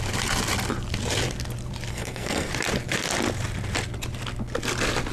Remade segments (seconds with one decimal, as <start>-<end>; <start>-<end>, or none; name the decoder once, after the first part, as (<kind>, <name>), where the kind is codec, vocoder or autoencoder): 1.9-2.5 (codec, SNAC)